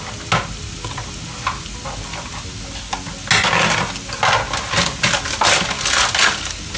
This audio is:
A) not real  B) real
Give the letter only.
B